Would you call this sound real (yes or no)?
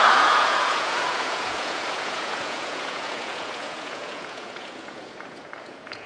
no